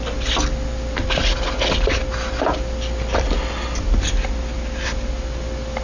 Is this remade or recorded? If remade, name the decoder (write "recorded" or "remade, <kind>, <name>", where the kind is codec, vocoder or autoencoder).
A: recorded